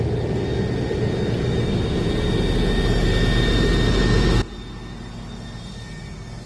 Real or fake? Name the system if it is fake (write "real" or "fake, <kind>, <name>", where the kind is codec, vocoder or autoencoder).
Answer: real